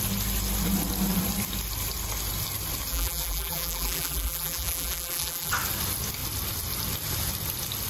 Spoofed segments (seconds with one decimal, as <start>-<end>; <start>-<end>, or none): 2.9-5.5